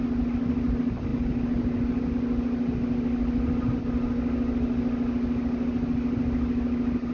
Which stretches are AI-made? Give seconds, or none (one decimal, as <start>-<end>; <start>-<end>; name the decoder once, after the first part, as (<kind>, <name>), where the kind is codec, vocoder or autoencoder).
none